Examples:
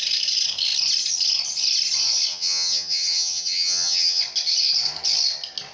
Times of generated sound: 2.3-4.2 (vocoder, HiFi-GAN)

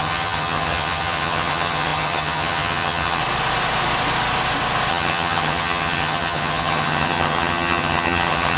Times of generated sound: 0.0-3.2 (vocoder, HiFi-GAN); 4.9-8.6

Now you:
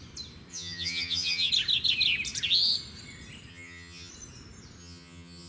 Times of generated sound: 0.5-1.5 (vocoder, HiFi-GAN); 3.5-4.1; 4.8-5.5

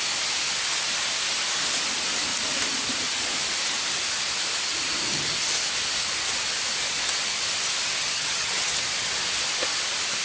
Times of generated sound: 8.0-8.7 (vocoder, HiFi-GAN)

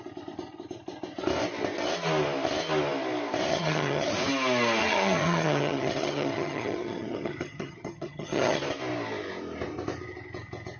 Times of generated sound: 3.5-4.1 (vocoder, HiFi-GAN); 4.8-8.6

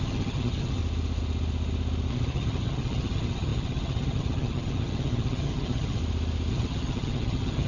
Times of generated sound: 0.0-0.8 (vocoder, HiFi-GAN); 2.1-6.0; 6.5-7.7

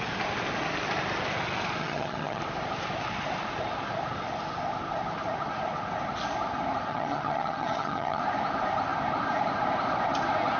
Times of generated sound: 1.8-2.4 (vocoder, HiFi-GAN); 6.9-8.2